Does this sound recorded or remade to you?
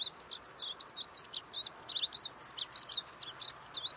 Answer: recorded